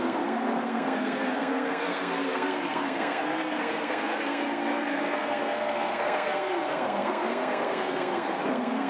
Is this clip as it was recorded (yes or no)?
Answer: no